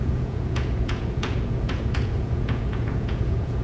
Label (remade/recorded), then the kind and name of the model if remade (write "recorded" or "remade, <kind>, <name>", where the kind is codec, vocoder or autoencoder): remade, vocoder, Vocos